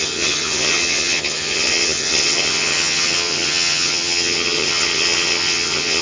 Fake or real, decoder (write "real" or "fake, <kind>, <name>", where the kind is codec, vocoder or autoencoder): fake, vocoder, HiFi-GAN